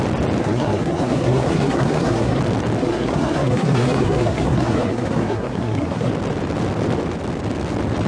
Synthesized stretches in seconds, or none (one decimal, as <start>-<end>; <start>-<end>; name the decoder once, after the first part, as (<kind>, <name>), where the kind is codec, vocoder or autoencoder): 0.4-2.4 (codec, SNAC); 2.8-6.1